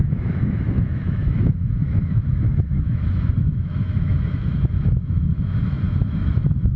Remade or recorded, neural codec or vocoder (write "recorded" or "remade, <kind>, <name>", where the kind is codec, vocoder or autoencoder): remade, autoencoder, DAC-VAE